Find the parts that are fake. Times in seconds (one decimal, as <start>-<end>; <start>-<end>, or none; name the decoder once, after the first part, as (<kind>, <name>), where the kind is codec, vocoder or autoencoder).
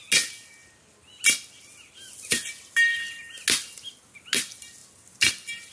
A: none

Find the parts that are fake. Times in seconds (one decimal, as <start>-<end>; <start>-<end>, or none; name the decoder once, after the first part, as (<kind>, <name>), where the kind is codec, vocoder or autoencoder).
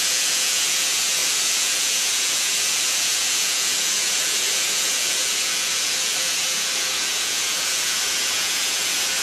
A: 0.0-9.2 (vocoder, Vocos)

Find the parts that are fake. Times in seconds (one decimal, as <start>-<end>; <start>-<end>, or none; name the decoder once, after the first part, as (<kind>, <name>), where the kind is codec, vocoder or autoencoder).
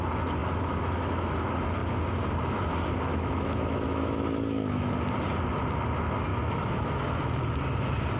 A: 0.4-1.3 (autoencoder, DAC-VAE); 3.1-4.9; 6.3-7.4